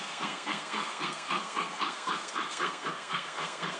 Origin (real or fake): fake